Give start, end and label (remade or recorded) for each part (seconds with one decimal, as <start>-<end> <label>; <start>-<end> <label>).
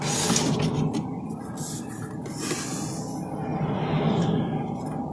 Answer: 0.0-5.1 recorded